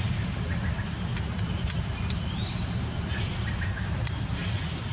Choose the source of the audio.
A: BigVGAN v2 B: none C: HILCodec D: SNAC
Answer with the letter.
A